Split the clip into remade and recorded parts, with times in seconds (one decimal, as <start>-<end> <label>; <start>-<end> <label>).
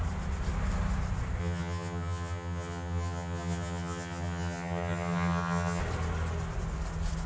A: 0.0-1.4 recorded; 1.4-5.8 remade; 5.8-7.3 recorded